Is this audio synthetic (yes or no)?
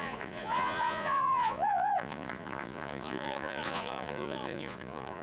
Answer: yes